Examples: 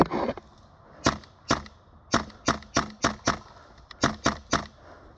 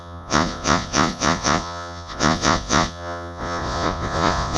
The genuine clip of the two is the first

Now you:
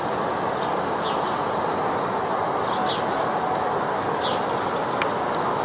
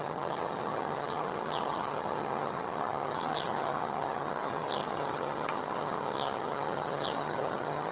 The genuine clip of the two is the first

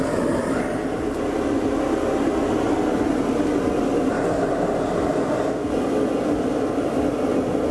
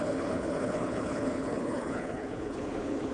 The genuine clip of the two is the first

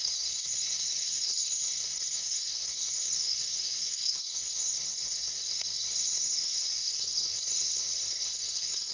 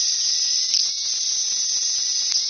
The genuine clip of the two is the second